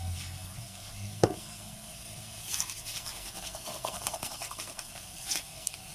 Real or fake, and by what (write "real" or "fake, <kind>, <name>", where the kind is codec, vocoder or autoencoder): fake, codec, SNAC